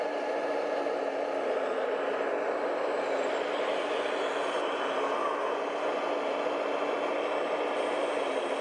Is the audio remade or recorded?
recorded